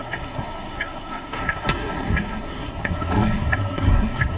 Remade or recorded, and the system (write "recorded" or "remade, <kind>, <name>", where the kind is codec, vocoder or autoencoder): remade, codec, SNAC